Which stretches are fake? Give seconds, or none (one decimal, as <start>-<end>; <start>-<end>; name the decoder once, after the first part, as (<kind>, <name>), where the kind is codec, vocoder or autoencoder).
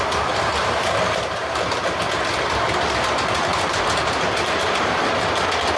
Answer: 0.6-2.0 (vocoder, BigVGAN v2); 3.5-5.0